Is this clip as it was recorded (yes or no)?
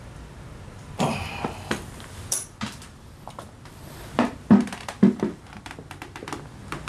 no